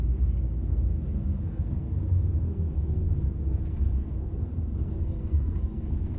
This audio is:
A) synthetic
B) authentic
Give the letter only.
A